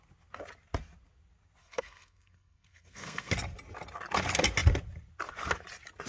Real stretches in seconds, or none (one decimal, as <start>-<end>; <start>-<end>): 0.0-1.6; 3.3-6.1